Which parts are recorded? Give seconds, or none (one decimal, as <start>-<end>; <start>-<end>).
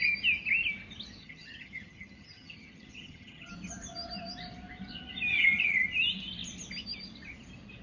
0.0-1.2; 3.5-5.3; 5.8-7.8